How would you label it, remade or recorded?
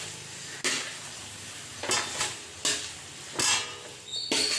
recorded